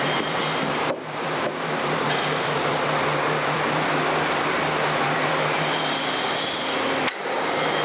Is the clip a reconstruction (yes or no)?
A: yes